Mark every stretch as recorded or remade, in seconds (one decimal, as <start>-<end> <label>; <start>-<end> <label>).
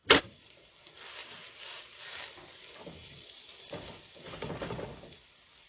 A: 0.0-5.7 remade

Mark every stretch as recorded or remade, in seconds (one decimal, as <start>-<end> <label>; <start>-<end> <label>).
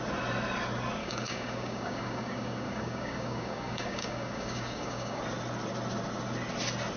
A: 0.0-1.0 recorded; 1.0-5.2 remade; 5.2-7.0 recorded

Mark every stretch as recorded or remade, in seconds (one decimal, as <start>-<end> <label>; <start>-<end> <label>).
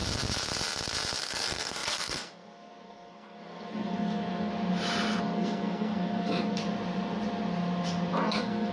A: 0.0-1.2 recorded; 1.2-4.5 remade; 4.5-5.2 recorded; 5.2-6.6 remade; 6.6-8.1 recorded; 8.1-8.7 remade